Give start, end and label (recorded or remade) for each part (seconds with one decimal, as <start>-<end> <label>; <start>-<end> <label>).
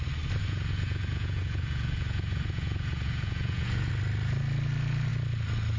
0.0-0.4 recorded; 0.4-3.9 remade; 3.9-5.8 recorded